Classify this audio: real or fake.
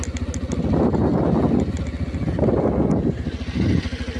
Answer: real